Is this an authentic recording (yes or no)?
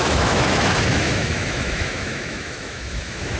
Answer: no